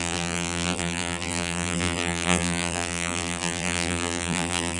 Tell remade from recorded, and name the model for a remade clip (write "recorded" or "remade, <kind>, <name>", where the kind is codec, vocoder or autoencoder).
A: remade, vocoder, BigVGAN v2